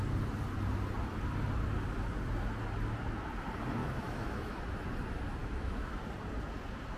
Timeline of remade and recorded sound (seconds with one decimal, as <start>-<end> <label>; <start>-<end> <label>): 0.0-3.8 recorded; 3.8-4.6 remade; 4.6-5.4 recorded; 5.4-6.0 remade; 6.0-7.0 recorded